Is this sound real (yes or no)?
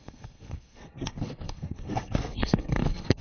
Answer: no